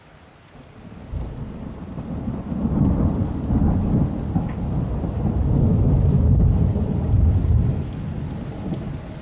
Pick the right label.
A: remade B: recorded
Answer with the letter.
B